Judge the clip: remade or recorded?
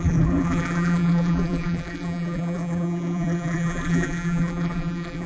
remade